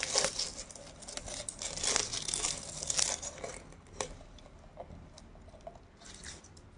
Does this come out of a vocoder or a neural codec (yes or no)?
no